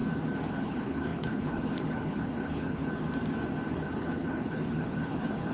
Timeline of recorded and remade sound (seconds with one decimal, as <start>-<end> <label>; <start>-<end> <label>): 0.0-0.5 recorded; 0.5-2.8 remade; 2.8-3.7 recorded; 3.7-5.5 remade